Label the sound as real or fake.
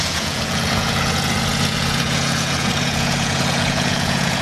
fake